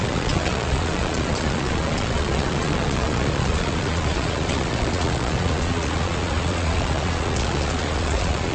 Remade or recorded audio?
remade